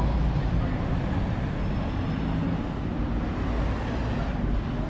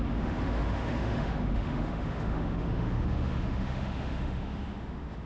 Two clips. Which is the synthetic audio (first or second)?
second